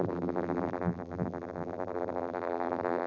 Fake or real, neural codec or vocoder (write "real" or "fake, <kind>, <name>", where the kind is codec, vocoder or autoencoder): fake, vocoder, BigVGAN v2